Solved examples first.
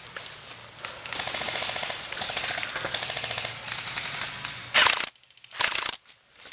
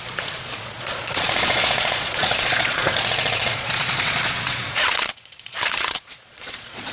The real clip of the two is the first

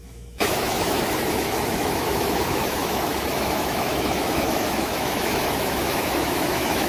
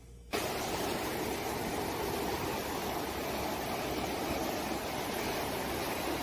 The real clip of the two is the second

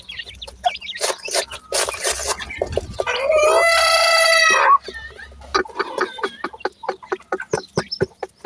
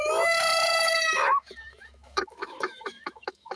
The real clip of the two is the first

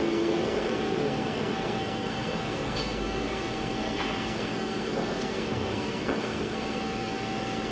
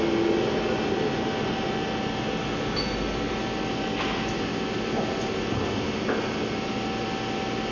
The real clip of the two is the second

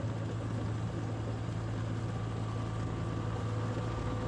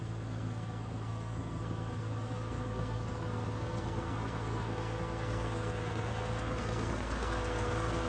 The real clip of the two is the first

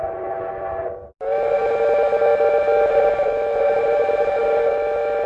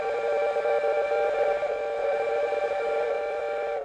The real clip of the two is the first